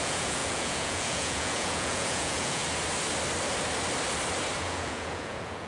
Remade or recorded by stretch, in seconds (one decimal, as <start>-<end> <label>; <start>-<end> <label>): 0.0-2.6 remade; 2.6-4.6 recorded; 4.6-5.7 remade

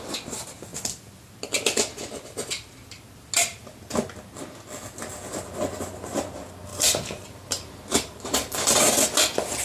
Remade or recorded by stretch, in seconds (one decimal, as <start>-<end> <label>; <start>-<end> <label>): 0.0-6.7 recorded; 6.7-8.8 remade; 8.8-9.6 recorded